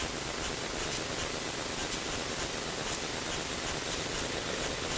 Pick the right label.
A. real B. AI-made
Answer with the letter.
A